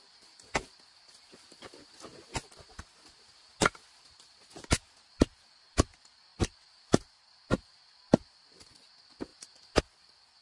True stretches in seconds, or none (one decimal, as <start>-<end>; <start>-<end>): 0.0-10.4